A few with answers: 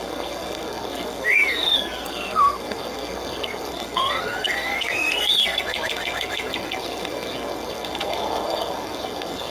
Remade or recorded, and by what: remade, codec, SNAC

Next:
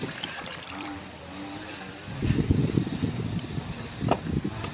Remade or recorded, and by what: remade, vocoder, BigVGAN v2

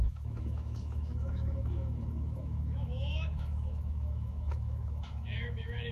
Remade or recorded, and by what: remade, autoencoder, DAC-VAE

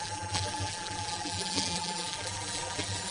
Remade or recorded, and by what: remade, vocoder, BigVGAN v2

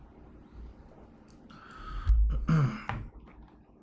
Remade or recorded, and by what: recorded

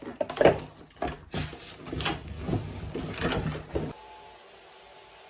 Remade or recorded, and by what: recorded